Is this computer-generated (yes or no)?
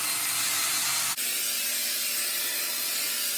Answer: no